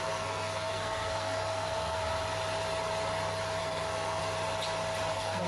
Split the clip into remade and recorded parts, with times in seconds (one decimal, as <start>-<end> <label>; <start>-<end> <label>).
0.0-2.0 remade; 2.0-3.6 recorded; 3.6-4.2 remade; 4.2-5.1 recorded; 5.1-5.5 remade